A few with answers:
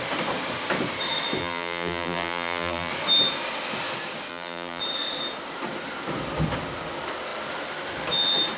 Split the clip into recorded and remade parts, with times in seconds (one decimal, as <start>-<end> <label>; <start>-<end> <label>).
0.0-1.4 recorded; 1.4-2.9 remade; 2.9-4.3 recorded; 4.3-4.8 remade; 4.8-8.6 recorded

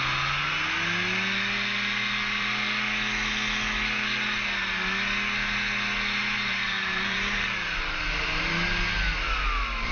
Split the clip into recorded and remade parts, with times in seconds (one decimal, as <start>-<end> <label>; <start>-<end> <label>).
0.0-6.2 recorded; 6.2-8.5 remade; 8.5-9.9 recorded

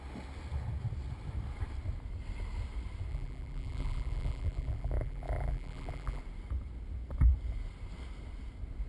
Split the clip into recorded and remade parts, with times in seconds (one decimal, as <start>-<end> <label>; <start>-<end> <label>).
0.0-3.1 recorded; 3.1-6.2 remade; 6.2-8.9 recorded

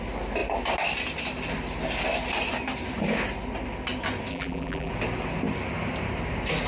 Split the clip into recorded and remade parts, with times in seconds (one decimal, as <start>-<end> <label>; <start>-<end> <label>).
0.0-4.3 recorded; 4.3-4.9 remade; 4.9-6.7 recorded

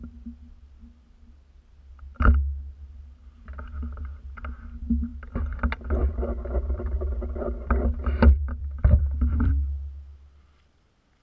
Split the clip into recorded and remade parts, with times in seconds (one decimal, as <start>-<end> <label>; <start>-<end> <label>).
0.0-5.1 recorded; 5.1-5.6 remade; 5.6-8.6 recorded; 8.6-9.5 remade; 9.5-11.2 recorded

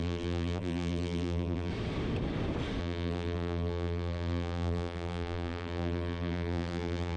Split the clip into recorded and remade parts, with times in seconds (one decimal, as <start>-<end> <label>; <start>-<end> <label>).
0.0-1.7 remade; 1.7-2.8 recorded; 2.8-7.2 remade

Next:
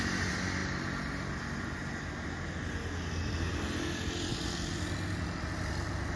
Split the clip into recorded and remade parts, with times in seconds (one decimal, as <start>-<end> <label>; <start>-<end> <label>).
0.0-6.2 recorded